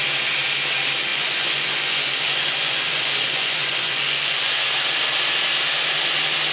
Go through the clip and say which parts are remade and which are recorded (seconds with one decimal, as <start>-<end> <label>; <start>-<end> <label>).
0.0-1.1 recorded; 1.1-4.5 remade; 4.5-6.5 recorded